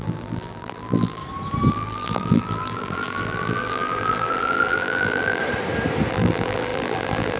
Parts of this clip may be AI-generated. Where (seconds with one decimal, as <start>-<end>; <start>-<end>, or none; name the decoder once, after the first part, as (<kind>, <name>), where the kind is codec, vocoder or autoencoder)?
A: 0.0-1.2 (vocoder, BigVGAN v2); 1.7-5.4; 6.1-7.4